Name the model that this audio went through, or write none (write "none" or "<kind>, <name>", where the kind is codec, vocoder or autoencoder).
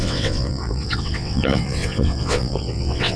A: vocoder, WaveNeXt